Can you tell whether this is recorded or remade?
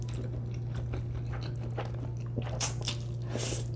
recorded